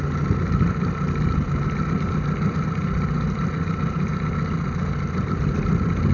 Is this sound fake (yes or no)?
no